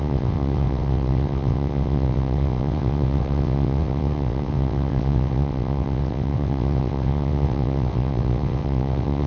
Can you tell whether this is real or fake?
fake